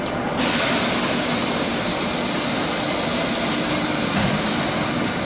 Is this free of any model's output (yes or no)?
yes